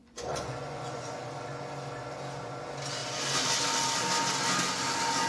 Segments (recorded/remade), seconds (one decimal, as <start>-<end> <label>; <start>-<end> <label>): 0.0-1.3 remade; 1.3-5.3 recorded